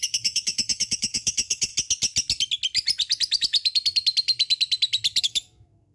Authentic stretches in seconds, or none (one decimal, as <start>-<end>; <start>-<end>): 1.7-5.2